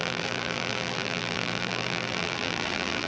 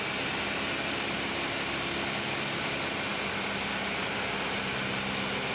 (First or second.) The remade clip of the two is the first